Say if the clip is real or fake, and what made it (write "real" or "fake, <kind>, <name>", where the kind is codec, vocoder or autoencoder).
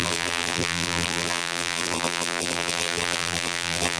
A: fake, vocoder, BigVGAN v2